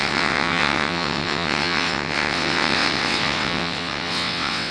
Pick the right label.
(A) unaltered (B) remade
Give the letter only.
B